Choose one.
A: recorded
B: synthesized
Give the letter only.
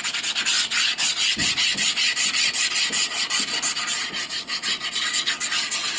A